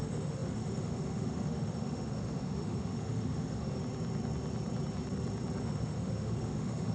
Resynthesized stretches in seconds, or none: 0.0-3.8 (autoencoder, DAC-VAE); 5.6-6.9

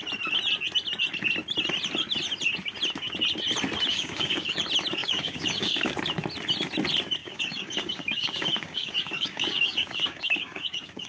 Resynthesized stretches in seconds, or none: 3.9-4.6 (codec, DAC); 5.0-5.9; 7.2-11.1

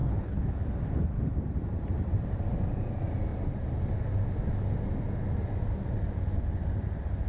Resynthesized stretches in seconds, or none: 0.0-0.5 (codec, HILCodec)

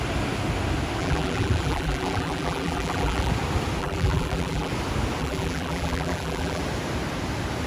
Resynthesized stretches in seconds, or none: 1.0-3.3 (vocoder, BigVGAN v2); 3.8-4.7; 5.2-6.6

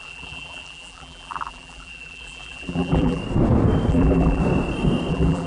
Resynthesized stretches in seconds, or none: 0.0-3.2 (vocoder, BigVGAN v2); 3.9-4.4; 5.1-5.5

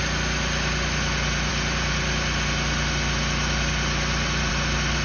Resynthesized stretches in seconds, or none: none

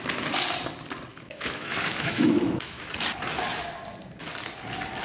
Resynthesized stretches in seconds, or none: 1.1-2.9 (autoencoder, DAC-VAE)

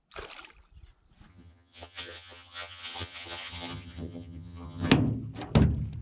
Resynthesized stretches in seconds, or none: 1.3-4.9 (vocoder, HiFi-GAN)